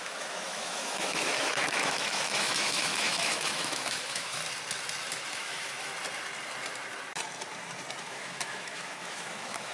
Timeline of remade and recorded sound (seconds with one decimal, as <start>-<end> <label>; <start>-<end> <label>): 0.0-4.4 remade; 4.4-5.3 recorded; 5.3-5.9 remade; 5.9-8.0 recorded; 8.0-9.7 remade